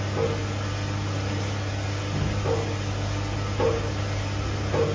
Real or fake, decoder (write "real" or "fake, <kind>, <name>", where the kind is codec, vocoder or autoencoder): real